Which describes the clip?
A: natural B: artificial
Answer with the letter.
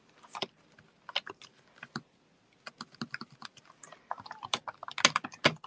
A